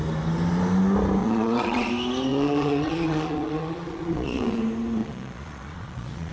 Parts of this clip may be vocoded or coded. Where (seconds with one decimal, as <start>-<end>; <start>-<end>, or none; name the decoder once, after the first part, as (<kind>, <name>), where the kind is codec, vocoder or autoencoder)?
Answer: 1.2-1.9 (vocoder, Vocos); 2.3-4.6; 5.0-6.3